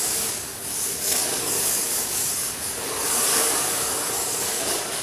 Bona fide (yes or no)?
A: no